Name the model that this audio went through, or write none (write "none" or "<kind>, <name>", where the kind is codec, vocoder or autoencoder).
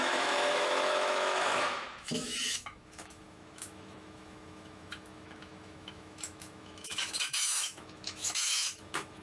autoencoder, DAC-VAE